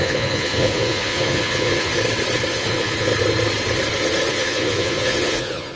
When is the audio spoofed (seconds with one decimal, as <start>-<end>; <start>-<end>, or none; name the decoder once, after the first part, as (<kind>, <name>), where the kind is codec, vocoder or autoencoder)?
0.0-1.9 (vocoder, Vocos); 2.5-3.1; 4.3-5.8